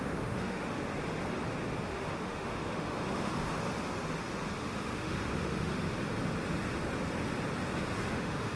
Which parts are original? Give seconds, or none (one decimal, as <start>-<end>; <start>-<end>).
0.8-1.9; 3.5-4.6; 5.7-8.1